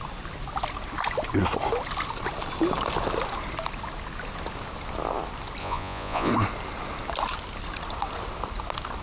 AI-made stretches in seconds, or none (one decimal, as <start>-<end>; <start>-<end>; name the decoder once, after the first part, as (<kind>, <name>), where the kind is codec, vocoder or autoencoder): 5.6-6.3 (vocoder, Vocos)